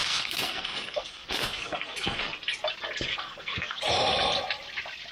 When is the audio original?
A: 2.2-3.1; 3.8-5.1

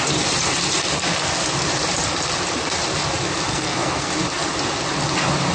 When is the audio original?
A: 0.0-3.5; 4.1-5.5

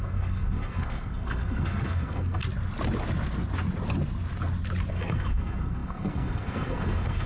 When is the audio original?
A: 2.4-4.9

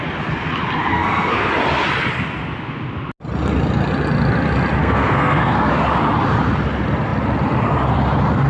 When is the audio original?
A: 0.0-0.9; 1.5-4.8; 5.7-8.5

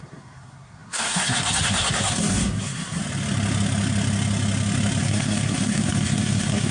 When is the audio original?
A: 3.0-5.0

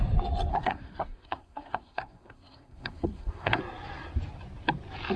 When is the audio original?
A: 0.0-0.5; 3.6-5.2

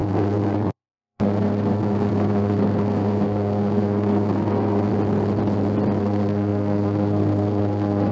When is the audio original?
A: 4.9-6.0

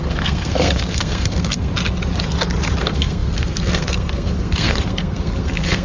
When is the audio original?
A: 1.7-2.8